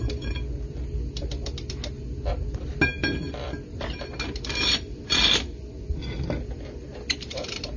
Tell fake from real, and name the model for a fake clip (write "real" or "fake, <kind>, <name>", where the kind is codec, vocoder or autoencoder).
real